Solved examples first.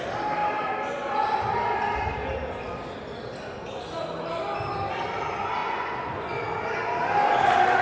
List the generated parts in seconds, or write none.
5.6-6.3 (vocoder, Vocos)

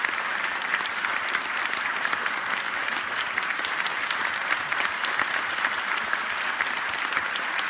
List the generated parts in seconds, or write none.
none

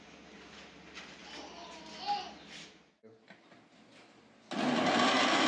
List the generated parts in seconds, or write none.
none